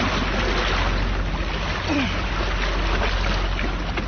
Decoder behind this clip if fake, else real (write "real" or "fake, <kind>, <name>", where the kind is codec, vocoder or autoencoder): real